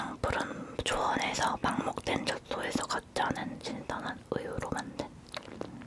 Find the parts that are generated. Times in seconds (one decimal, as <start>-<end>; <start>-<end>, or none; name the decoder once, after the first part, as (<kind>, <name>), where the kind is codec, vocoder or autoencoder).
none